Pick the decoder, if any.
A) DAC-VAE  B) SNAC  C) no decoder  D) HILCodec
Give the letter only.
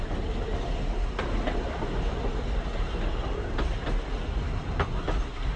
C